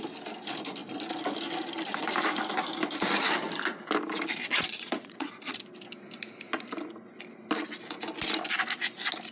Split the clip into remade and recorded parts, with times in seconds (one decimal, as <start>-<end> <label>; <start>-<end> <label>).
0.0-4.4 recorded; 4.4-5.3 remade; 5.3-9.3 recorded